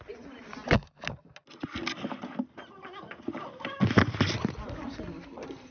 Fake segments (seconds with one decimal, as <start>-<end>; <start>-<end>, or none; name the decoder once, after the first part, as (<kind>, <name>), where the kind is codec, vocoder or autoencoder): none